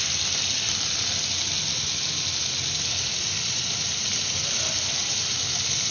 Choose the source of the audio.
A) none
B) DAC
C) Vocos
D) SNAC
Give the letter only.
A